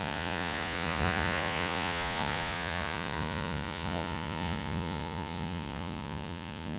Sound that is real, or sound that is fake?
fake